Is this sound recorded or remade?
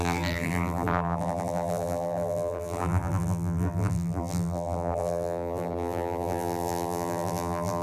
remade